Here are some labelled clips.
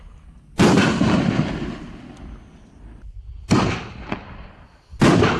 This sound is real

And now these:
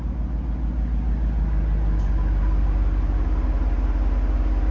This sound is real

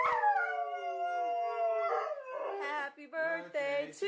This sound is real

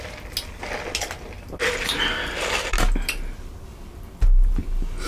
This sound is real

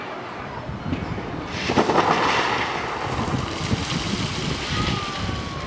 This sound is real